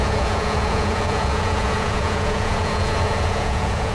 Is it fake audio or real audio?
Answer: fake